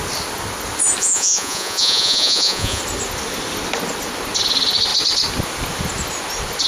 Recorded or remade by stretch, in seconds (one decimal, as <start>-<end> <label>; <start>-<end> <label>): 0.0-1.0 recorded; 1.0-2.8 remade; 2.8-6.7 recorded